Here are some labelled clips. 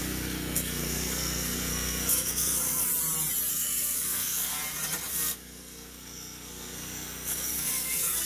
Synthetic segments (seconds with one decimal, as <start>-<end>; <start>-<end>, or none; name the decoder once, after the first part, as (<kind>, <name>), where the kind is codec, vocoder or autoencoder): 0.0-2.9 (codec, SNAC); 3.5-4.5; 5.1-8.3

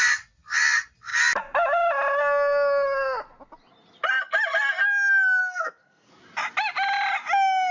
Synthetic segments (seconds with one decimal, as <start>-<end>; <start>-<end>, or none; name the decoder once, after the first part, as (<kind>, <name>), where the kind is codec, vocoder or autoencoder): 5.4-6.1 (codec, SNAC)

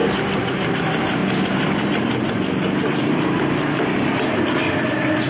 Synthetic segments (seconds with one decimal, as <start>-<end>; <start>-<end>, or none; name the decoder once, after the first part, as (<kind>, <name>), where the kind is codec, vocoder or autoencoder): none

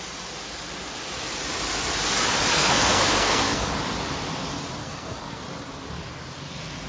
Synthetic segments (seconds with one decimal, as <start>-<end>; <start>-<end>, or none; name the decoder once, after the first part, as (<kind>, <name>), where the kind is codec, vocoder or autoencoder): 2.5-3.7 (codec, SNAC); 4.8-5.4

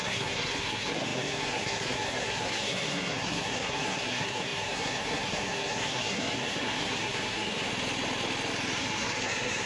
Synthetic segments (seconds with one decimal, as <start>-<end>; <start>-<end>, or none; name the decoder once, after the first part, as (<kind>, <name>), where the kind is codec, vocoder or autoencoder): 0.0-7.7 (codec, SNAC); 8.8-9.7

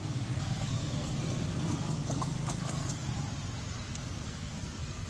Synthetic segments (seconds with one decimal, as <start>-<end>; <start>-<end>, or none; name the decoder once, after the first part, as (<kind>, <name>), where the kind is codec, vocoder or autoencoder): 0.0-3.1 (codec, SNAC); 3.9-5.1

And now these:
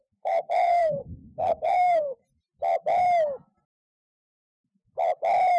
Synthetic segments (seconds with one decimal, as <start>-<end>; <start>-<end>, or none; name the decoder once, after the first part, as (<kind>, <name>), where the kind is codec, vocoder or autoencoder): 0.0-2.2 (codec, SNAC)